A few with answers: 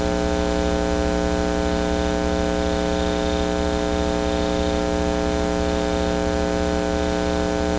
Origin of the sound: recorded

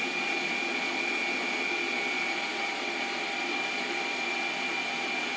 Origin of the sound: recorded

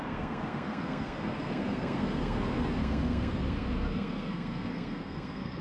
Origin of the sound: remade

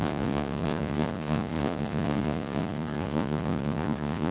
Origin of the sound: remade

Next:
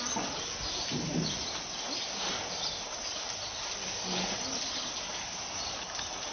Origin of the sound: recorded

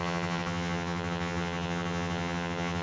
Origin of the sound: remade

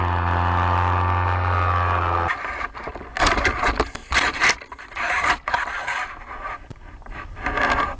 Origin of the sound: recorded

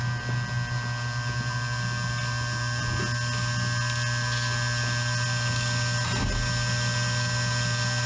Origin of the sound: recorded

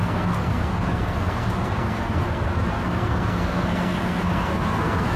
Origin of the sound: remade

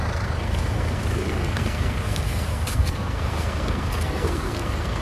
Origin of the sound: remade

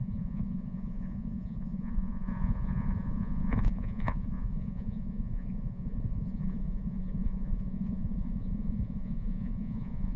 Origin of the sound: remade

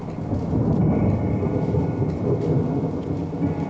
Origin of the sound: recorded